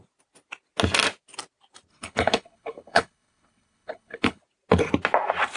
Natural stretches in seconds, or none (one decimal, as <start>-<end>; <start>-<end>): 0.0-1.9; 4.4-5.6